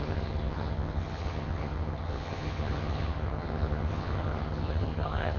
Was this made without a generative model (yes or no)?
no